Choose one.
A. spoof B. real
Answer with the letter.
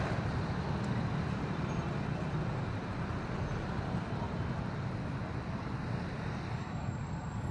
A